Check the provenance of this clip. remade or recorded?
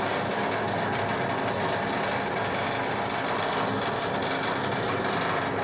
recorded